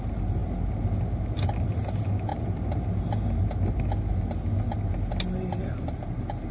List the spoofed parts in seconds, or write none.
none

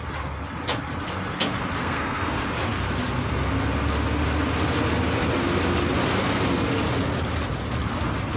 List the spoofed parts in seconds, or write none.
1.8-2.4 (codec, SNAC)

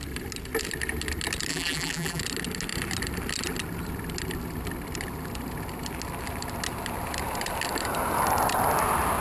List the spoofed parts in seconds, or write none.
1.5-2.2 (vocoder, BigVGAN v2)

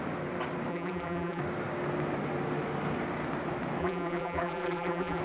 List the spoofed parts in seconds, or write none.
0.7-1.4 (vocoder, BigVGAN v2); 3.8-5.2

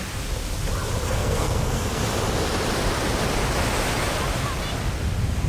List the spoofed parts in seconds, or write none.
1.0-2.0 (codec, SNAC)

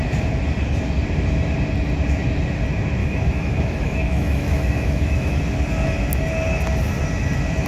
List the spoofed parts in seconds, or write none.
3.0-5.4 (autoencoder, DAC-VAE)

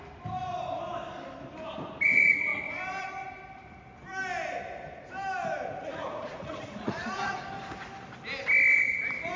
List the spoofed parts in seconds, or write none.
5.8-7.4 (vocoder, Vocos)

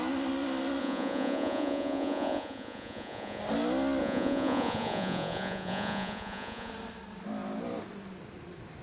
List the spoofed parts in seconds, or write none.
0.8-3.4 (vocoder, Vocos); 4.0-6.7